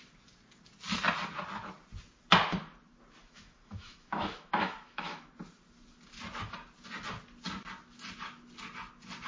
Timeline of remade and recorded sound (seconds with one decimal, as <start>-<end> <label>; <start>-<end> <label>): 0.0-3.2 recorded; 3.2-5.3 remade; 5.3-9.3 recorded